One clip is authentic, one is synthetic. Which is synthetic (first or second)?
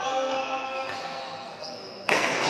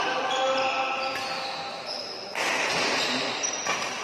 first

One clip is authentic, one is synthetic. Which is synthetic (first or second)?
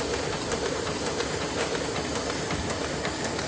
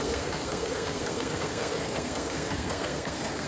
second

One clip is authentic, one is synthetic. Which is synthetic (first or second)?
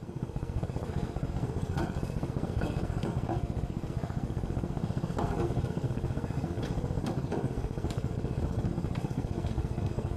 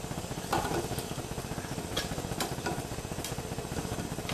first